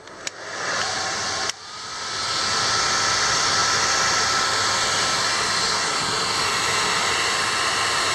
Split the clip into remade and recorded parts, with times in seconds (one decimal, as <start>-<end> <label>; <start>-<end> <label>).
0.0-8.1 recorded